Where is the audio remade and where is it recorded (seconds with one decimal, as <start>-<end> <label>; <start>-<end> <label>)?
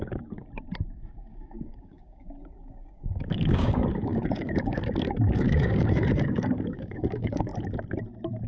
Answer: 0.0-0.4 remade; 0.4-1.1 recorded; 1.1-7.5 remade; 7.5-8.5 recorded